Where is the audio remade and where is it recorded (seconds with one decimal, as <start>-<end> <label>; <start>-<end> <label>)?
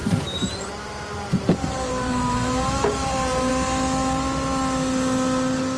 0.0-3.5 remade; 3.5-5.8 recorded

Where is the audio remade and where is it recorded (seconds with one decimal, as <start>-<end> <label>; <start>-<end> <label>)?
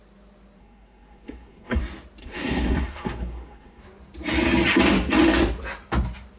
0.0-0.6 recorded; 0.6-1.8 remade; 1.8-2.2 recorded; 2.2-3.8 remade; 3.8-6.4 recorded